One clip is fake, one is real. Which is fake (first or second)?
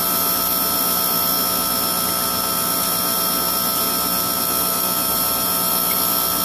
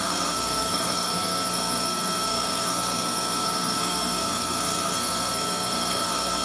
second